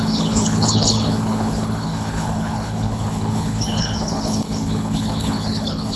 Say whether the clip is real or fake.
fake